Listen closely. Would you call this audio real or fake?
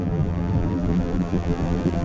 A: fake